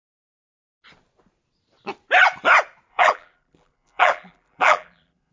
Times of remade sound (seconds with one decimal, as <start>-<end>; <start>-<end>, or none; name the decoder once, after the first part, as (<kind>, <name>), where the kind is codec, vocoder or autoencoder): 2.9-5.3 (vocoder, BigVGAN v2)